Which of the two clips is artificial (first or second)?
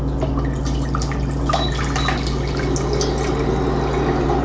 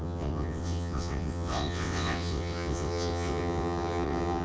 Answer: second